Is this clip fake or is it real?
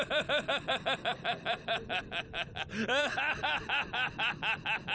fake